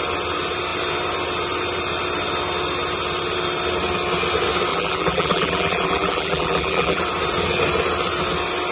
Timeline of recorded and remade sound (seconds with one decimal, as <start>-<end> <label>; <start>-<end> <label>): 0.0-4.7 recorded; 4.7-7.0 remade; 7.0-8.7 recorded